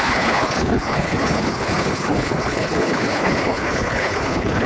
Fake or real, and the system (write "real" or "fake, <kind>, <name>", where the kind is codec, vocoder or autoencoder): fake, codec, HILCodec